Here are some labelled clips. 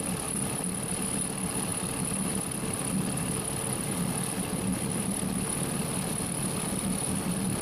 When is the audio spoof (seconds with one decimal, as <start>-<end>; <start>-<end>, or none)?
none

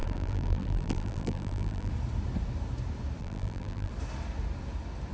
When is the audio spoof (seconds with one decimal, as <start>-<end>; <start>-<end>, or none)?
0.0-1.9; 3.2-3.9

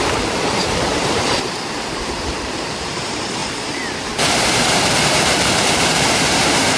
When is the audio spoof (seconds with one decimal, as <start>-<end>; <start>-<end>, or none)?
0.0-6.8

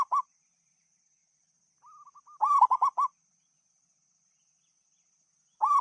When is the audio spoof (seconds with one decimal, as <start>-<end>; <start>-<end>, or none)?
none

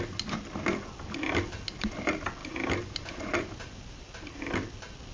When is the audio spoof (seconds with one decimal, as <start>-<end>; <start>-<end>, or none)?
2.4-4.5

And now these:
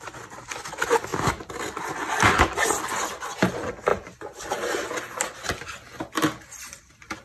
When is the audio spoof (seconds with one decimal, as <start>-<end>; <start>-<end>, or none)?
none

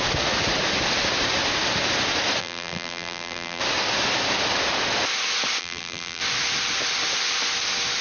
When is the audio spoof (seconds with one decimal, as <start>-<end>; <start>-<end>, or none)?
2.4-3.6; 5.6-6.2